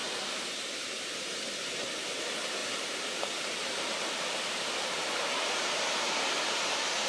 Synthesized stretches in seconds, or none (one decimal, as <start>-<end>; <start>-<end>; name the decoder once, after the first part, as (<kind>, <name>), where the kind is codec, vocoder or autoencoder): 0.0-7.1 (vocoder, BigVGAN v2)